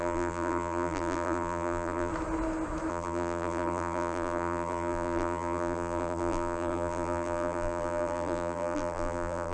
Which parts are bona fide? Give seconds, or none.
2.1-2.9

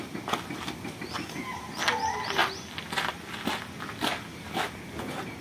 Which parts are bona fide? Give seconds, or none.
0.0-5.4